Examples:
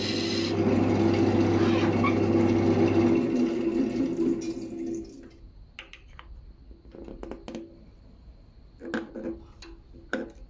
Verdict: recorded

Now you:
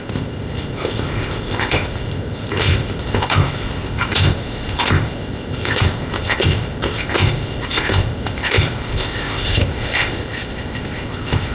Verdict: remade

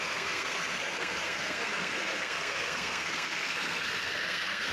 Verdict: remade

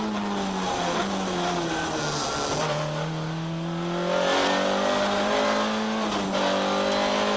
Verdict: recorded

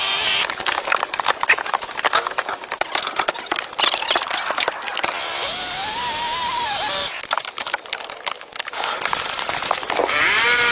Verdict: recorded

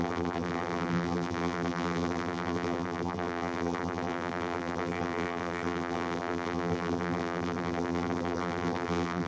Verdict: remade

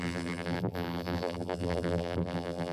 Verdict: remade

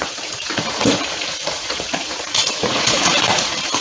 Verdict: remade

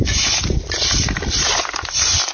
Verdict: recorded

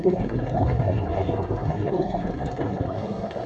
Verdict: remade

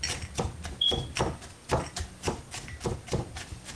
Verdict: recorded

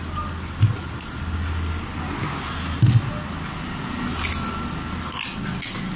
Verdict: recorded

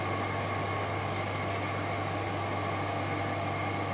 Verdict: recorded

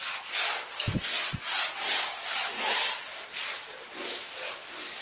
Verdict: recorded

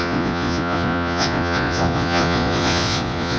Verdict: remade